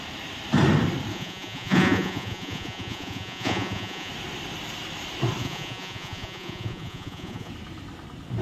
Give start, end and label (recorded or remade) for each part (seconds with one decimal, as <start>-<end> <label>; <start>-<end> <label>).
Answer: 0.0-1.1 recorded; 1.1-4.1 remade; 4.1-5.4 recorded; 5.4-7.5 remade; 7.5-8.4 recorded